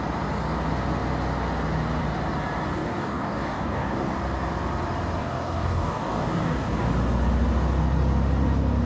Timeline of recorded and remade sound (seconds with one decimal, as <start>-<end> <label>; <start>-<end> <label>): 0.0-2.7 recorded; 2.7-4.2 remade; 4.2-5.2 recorded; 5.2-6.9 remade; 6.9-8.9 recorded